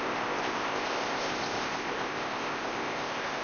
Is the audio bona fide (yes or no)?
no